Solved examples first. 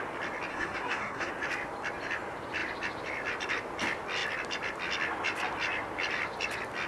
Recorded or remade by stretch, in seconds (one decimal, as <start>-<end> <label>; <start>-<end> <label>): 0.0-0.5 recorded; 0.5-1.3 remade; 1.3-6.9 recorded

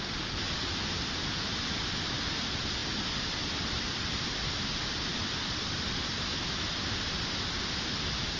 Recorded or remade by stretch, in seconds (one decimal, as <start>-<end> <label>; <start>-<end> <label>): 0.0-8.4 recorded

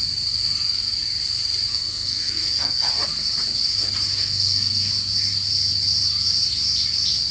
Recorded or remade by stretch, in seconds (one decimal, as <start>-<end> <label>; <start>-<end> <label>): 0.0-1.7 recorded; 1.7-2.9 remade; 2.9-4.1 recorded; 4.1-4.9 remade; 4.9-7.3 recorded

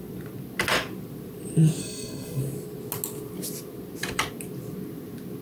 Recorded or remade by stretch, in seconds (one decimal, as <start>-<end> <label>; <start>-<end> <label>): 0.0-1.8 recorded; 1.8-2.4 remade; 2.4-5.4 recorded

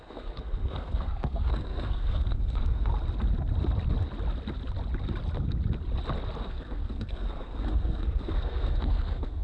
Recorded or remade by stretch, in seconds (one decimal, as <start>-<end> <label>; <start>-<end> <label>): 0.0-2.9 remade; 2.9-6.4 recorded; 6.4-9.4 remade